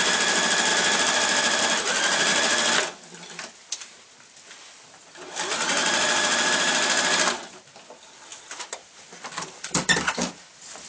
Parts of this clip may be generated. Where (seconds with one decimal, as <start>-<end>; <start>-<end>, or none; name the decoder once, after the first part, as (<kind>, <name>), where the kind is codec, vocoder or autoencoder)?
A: 2.3-4.0 (vocoder, BigVGAN v2); 5.8-6.5; 8.3-9.2